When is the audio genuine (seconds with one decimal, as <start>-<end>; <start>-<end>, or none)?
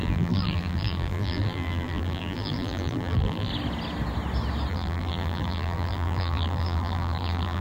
3.5-4.7